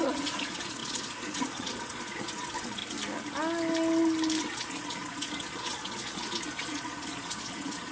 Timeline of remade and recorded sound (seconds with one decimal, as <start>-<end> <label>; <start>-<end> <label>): 0.0-2.8 remade; 2.8-4.4 recorded; 4.4-7.9 remade